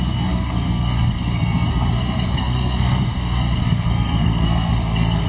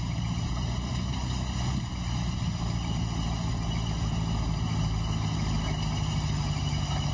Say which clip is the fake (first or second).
first